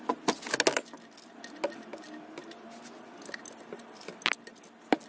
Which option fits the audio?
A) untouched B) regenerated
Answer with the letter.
A